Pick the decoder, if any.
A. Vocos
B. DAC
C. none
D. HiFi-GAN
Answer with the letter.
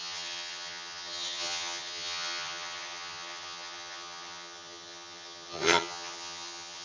D